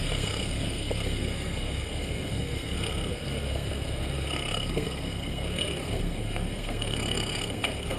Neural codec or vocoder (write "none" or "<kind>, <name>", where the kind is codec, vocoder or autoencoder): codec, SNAC